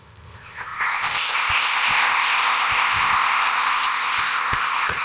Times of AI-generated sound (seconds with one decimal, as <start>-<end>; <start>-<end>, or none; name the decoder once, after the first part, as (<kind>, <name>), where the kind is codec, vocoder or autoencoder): 0.0-5.0 (codec, ZipCodec)

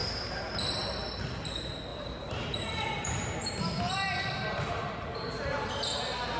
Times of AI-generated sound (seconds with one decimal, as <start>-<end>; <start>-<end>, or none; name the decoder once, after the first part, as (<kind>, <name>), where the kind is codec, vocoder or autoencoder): 0.0-0.6 (vocoder, BigVGAN v2); 1.9-5.7